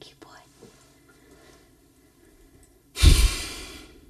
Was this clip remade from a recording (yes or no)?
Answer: no